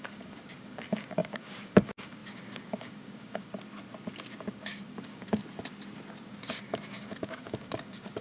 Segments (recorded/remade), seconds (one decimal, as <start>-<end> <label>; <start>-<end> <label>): 0.0-3.5 remade; 3.5-4.5 recorded; 4.5-5.4 remade; 5.4-6.1 recorded; 6.1-8.2 remade

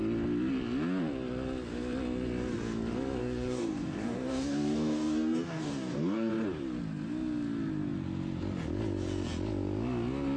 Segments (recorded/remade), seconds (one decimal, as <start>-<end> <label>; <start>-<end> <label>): 0.0-3.2 recorded; 3.2-6.3 remade; 6.3-10.4 recorded

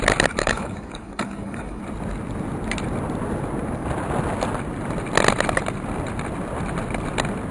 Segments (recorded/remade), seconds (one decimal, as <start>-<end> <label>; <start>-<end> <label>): 0.0-0.4 recorded; 0.4-1.8 remade; 1.8-7.5 recorded

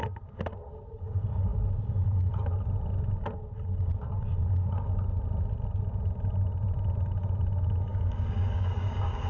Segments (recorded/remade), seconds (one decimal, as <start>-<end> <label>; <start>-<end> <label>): 0.0-7.9 recorded; 7.9-9.3 remade